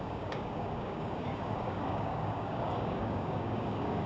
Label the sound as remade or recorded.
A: remade